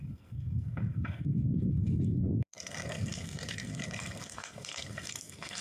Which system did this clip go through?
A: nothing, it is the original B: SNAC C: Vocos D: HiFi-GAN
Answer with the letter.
B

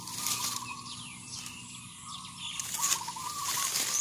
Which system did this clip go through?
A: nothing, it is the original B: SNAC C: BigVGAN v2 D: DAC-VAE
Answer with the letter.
A